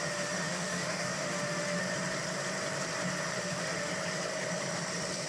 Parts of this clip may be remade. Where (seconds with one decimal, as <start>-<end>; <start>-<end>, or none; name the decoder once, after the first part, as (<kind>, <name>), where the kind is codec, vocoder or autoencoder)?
0.0-1.8 (autoencoder, DAC-VAE); 3.4-3.9